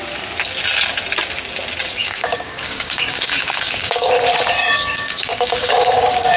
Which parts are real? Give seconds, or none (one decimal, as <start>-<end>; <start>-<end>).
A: 0.0-2.0; 4.1-4.6